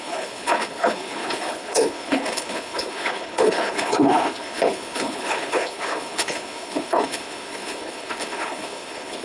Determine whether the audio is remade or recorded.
remade